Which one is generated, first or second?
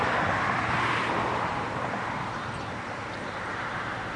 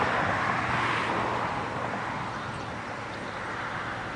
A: first